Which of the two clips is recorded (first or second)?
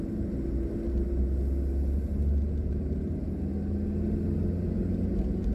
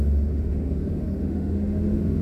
first